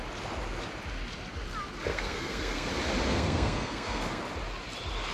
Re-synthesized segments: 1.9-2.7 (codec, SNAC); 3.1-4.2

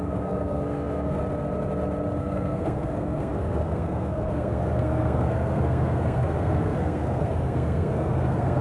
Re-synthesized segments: 0.0-1.2 (codec, SNAC); 2.2-8.6